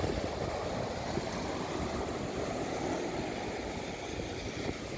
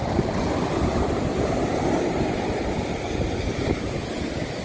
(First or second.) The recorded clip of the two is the first